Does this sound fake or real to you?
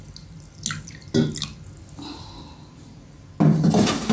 real